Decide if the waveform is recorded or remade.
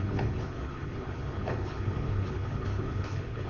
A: remade